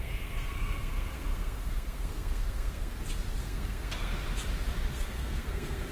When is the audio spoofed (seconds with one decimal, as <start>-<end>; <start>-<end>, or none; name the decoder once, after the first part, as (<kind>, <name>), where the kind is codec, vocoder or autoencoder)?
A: 0.0-2.9 (codec, SNAC); 3.4-4.1; 4.9-5.9